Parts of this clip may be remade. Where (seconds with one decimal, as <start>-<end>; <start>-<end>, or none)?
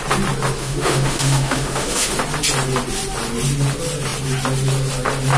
0.6-2.1